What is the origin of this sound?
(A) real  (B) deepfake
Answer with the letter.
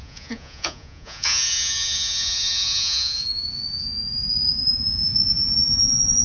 B